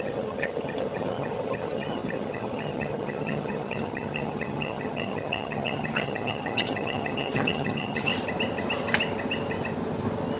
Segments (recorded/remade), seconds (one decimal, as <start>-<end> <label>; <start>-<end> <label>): 0.0-8.1 remade; 8.1-10.4 recorded